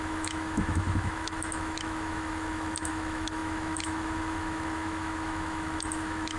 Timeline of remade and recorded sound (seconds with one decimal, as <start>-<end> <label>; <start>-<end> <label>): 0.0-6.4 remade

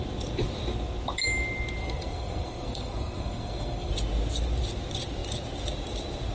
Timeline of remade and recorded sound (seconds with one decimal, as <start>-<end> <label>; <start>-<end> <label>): 0.0-1.8 recorded; 1.8-3.9 remade; 3.9-6.3 recorded

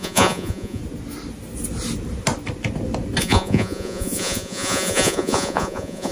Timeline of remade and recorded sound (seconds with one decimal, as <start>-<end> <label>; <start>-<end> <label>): 0.0-0.8 remade; 0.8-3.2 recorded; 3.2-6.1 remade

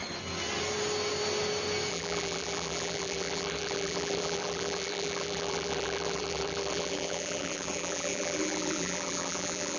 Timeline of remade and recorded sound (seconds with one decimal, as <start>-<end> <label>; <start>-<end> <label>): 0.0-1.9 recorded; 1.9-9.8 remade

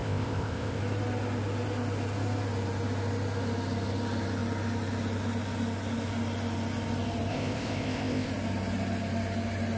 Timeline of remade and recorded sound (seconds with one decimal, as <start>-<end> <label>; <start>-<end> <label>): 0.0-0.8 remade; 0.8-7.3 recorded; 7.3-8.3 remade; 8.3-9.8 recorded

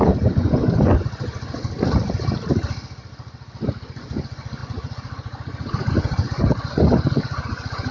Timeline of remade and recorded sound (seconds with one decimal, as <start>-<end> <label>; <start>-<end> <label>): 0.0-1.6 remade; 1.6-3.8 recorded; 3.8-7.9 remade

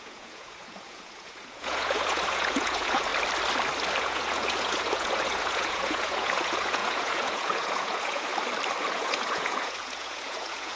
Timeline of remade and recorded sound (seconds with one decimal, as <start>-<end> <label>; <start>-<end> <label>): 0.0-3.1 remade; 3.1-4.0 recorded; 4.0-8.3 remade; 8.3-8.9 recorded; 8.9-10.8 remade

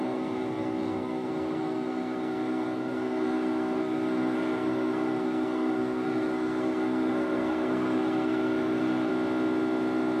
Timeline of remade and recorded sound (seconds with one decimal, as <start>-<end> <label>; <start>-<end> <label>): 0.0-9.1 remade; 9.1-10.2 recorded